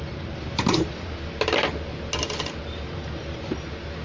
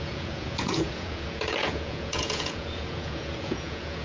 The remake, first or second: second